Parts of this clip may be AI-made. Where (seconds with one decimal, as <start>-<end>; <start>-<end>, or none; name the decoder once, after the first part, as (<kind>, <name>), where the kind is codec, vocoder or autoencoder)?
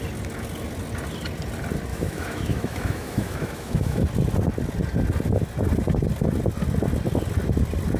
1.9-4.0 (autoencoder, DAC-VAE)